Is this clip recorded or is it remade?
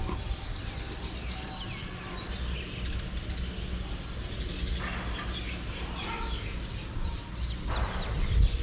recorded